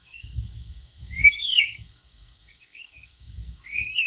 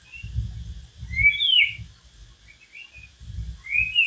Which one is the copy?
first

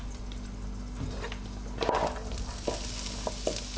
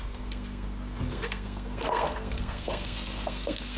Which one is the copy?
second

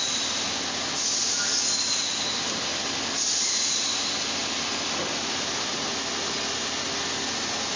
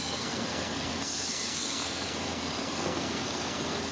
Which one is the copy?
second